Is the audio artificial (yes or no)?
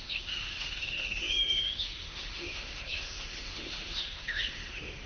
yes